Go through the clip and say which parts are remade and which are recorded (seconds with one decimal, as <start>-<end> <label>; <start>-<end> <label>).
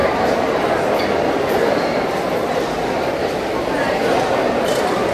0.0-5.1 remade